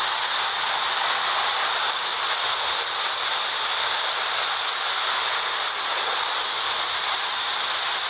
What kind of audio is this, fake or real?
real